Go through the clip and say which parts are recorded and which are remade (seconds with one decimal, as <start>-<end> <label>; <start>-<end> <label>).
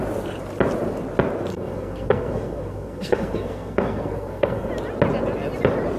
0.0-1.5 recorded; 1.5-4.7 remade; 4.7-6.0 recorded